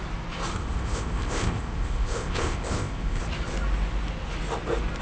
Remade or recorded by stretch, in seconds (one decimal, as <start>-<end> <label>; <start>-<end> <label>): 0.0-0.5 recorded; 0.5-3.2 remade; 3.2-5.0 recorded